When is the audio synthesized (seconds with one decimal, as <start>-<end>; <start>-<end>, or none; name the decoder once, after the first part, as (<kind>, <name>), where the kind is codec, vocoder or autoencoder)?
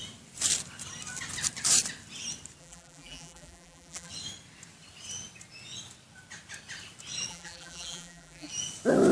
2.6-4.1 (vocoder, BigVGAN v2); 7.3-8.5